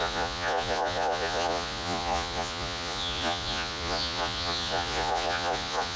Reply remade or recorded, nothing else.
remade